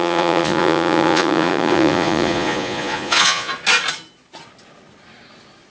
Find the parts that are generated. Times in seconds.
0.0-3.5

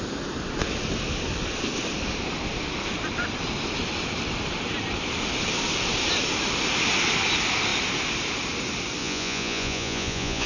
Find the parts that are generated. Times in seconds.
9.0-10.5

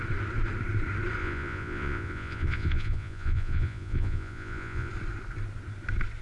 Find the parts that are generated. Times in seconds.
1.2-4.9

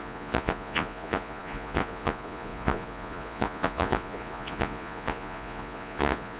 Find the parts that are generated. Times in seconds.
0.0-6.4

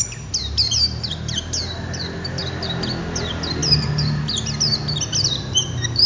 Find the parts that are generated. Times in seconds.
none

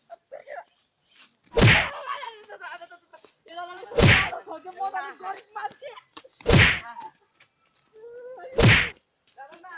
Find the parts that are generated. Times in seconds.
3.1-4.8; 6.1-7.5

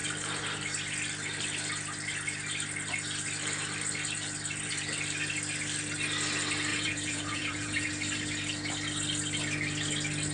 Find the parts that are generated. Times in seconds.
6.7-7.9